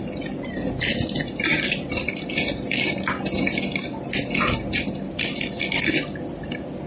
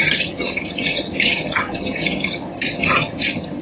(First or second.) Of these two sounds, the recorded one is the first